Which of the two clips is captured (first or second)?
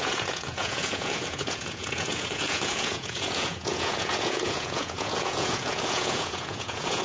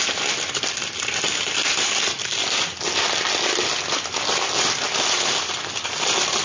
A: second